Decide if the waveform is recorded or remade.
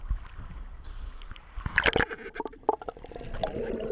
recorded